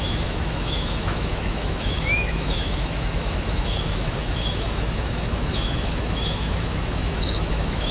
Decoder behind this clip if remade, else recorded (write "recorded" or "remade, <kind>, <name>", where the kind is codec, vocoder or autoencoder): remade, autoencoder, DAC-VAE